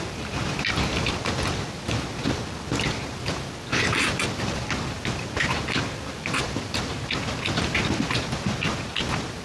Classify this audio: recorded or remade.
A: recorded